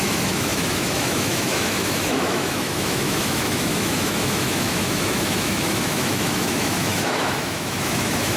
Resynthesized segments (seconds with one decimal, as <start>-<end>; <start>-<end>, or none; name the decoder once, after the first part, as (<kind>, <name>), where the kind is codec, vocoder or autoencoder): 0.0-8.4 (autoencoder, DAC-VAE)